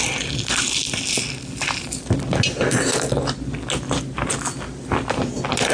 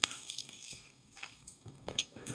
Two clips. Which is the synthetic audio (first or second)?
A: second